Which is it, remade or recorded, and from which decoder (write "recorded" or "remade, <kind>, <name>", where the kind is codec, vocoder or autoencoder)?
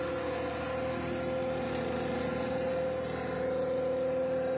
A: recorded